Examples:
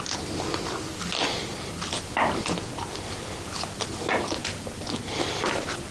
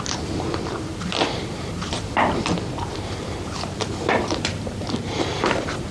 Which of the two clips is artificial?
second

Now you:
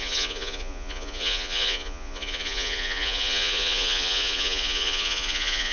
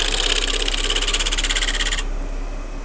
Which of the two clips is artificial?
first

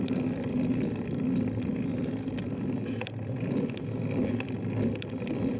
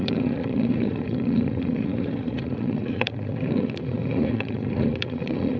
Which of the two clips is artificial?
second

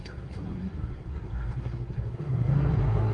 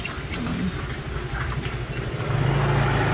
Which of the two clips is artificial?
first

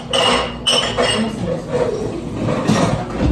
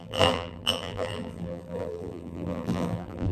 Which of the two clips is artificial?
second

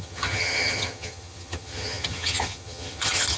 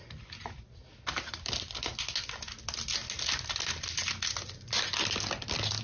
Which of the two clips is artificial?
first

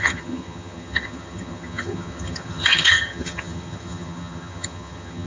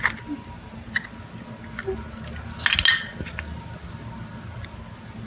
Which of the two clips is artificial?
first